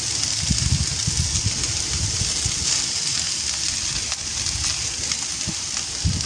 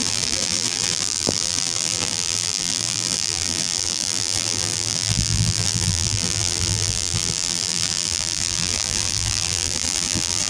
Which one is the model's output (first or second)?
second